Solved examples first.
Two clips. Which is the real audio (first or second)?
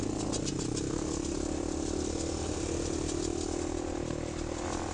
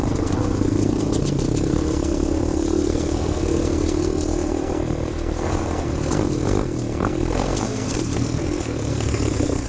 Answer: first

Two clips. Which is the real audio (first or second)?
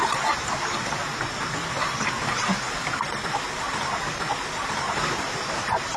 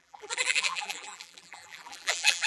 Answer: first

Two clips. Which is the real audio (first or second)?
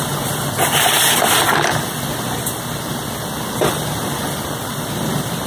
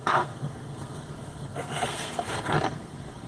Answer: first